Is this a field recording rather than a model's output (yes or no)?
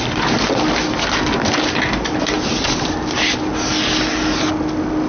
yes